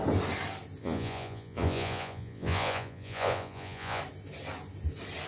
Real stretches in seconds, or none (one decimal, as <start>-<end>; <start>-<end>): 0.0-0.8; 4.0-5.3